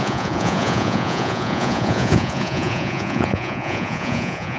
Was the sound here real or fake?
fake